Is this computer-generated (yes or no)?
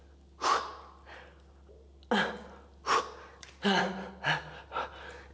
no